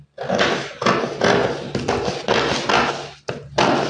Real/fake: real